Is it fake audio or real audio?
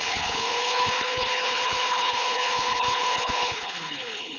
fake